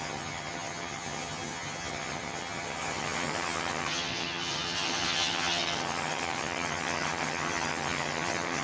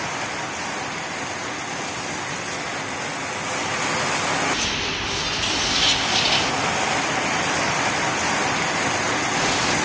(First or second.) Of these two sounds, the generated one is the first